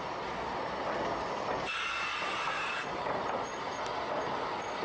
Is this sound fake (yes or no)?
no